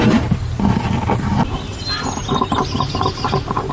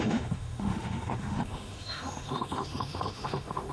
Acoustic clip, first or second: first